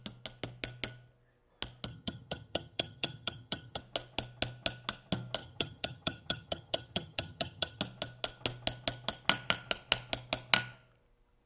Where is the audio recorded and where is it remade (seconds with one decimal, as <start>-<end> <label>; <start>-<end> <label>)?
0.0-1.9 recorded; 1.9-3.8 remade; 3.8-5.4 recorded; 5.4-7.8 remade; 7.8-11.5 recorded